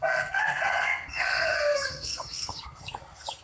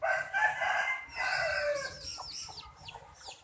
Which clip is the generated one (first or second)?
first